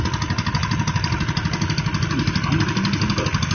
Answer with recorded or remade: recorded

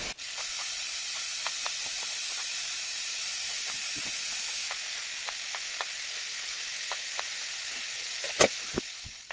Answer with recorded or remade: recorded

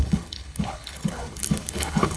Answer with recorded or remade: remade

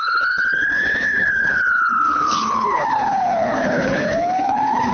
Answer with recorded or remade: remade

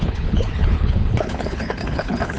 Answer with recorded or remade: remade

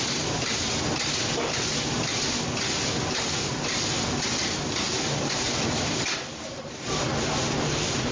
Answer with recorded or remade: recorded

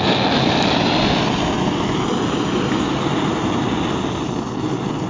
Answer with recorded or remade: recorded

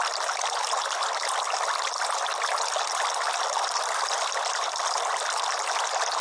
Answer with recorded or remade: recorded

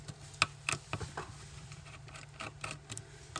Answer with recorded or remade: recorded